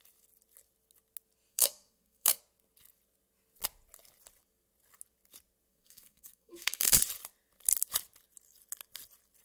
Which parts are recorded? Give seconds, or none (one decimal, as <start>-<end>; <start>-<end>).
0.0-1.5; 2.4-5.7; 7.0-9.4